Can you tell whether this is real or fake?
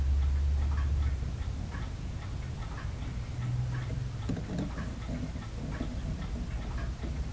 real